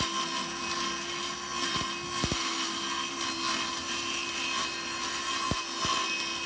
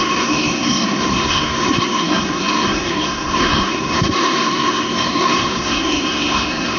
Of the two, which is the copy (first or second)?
second